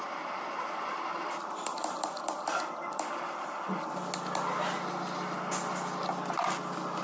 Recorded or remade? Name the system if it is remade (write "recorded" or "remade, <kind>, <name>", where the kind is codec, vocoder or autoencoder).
recorded